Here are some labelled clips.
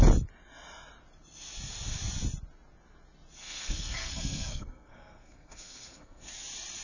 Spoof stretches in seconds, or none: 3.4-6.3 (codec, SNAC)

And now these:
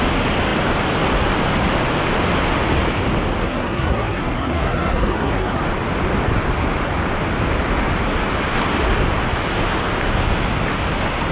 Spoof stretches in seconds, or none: 3.4-5.6 (codec, SNAC)

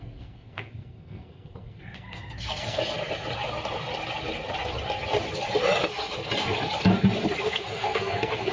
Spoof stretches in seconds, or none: 0.0-2.8 (codec, SNAC); 7.4-8.5